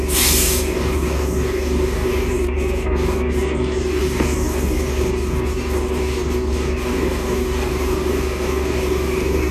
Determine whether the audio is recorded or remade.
remade